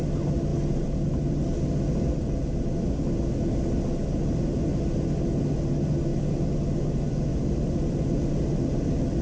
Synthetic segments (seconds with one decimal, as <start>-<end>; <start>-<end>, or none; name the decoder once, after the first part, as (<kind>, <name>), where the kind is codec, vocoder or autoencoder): none

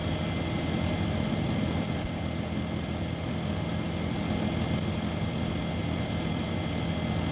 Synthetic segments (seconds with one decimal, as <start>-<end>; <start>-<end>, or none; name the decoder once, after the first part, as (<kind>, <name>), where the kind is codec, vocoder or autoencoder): none

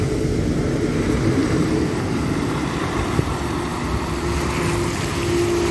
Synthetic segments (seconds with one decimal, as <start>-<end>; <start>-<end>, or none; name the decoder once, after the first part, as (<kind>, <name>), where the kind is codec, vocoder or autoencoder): 1.4-3.3 (vocoder, BigVGAN v2)

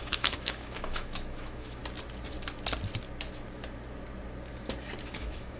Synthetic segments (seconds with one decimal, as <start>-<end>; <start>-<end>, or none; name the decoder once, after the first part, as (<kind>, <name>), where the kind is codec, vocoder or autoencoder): 0.0-1.8 (autoencoder, DAC-VAE); 5.1-5.6

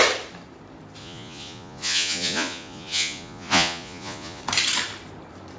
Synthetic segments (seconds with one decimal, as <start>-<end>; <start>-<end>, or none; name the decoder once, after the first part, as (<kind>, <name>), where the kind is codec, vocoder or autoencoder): 1.0-4.4 (vocoder, Vocos)